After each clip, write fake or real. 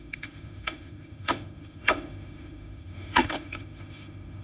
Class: fake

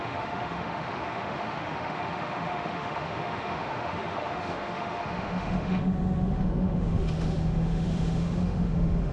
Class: fake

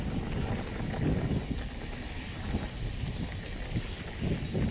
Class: real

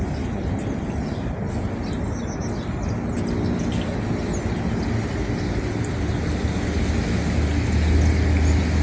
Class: real